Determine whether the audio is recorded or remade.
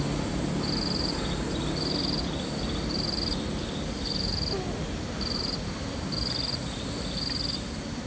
recorded